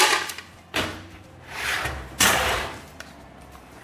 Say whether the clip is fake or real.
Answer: fake